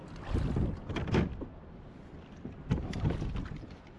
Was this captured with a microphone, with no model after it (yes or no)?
yes